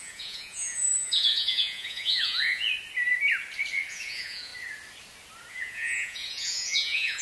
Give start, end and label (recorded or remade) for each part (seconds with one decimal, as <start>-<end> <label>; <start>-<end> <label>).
0.0-2.7 remade; 2.7-3.9 recorded; 3.9-4.5 remade; 4.5-5.5 recorded; 5.5-7.2 remade